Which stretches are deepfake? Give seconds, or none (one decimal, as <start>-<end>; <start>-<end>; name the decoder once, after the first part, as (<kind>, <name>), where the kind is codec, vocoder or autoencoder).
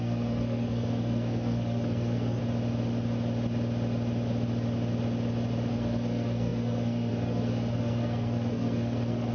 0.0-2.4 (codec, SNAC); 5.7-9.3